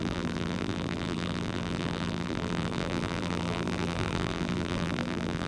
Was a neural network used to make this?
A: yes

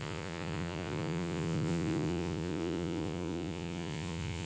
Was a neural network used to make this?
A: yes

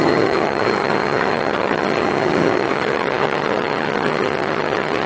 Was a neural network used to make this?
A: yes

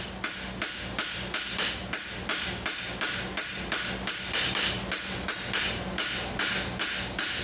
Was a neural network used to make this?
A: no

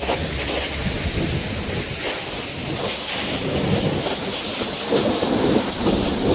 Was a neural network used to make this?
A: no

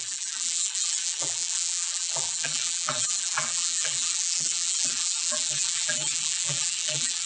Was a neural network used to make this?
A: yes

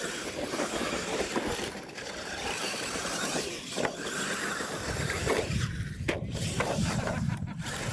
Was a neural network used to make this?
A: yes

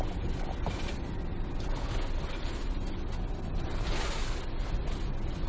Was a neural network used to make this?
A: no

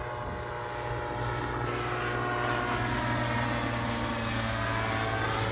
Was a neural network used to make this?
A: no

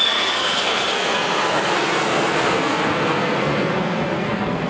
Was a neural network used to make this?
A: yes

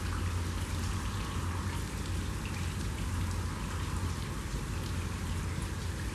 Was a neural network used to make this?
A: no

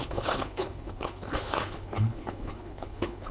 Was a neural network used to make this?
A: yes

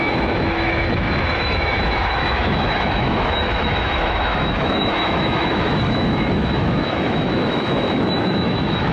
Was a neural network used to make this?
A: yes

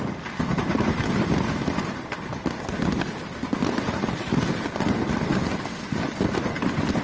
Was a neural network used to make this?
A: no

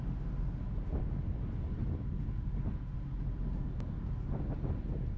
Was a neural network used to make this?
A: no